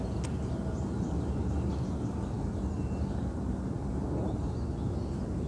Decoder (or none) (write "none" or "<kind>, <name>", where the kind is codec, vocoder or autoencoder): none